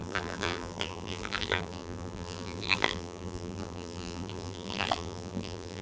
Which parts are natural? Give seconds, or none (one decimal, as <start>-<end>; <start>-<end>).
none

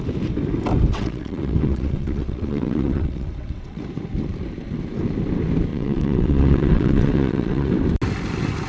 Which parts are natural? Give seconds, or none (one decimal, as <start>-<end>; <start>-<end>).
0.0-0.9; 3.8-5.7; 7.7-8.7

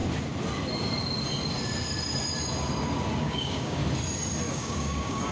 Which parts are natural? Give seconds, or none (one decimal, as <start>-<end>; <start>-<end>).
0.0-3.2; 3.8-4.5

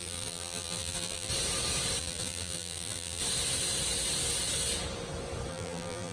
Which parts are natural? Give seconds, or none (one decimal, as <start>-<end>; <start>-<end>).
1.3-2.0; 3.2-5.5

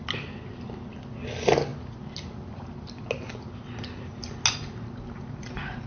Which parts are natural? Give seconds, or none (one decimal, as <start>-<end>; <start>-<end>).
0.0-5.9

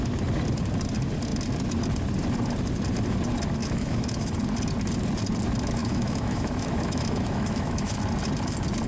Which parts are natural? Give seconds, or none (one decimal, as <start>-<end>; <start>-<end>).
0.0-3.6; 4.3-5.8; 8.0-8.9

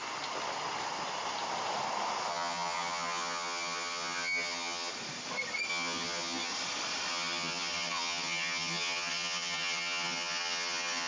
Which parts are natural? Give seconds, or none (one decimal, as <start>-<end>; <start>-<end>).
0.0-2.3; 4.9-5.7; 6.5-7.1

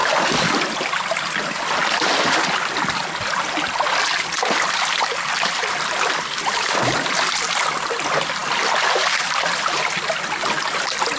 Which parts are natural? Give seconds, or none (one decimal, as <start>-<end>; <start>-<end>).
0.0-11.2